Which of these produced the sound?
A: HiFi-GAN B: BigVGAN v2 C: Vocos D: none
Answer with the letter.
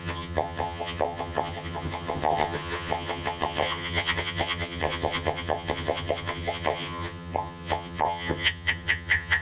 A